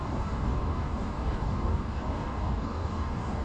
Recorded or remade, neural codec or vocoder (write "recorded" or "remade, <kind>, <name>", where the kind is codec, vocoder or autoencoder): remade, codec, DAC